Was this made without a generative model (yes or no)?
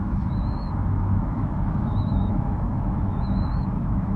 no